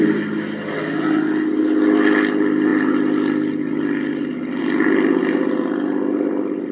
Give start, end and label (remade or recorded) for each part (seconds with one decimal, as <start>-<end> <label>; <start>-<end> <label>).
0.0-6.7 recorded